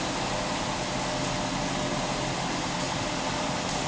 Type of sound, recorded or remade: recorded